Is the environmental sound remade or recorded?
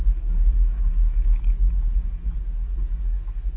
remade